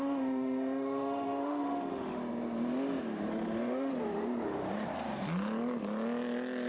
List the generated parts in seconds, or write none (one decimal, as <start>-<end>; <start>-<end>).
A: 0.0-2.2; 3.3-3.9